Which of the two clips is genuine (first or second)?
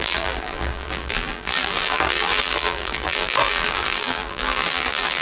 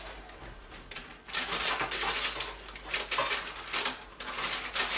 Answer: second